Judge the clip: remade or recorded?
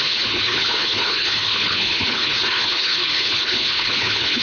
remade